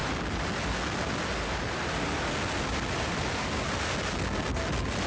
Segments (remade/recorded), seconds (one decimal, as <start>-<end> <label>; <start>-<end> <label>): 0.0-5.1 recorded